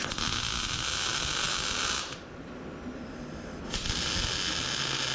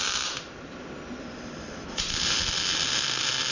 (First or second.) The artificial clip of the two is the second